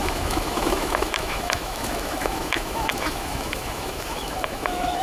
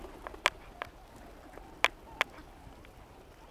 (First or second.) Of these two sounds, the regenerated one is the first